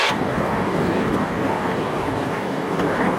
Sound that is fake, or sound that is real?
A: fake